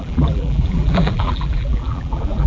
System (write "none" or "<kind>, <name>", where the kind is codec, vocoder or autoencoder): vocoder, BigVGAN v2